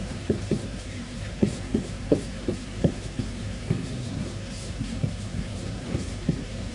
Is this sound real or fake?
fake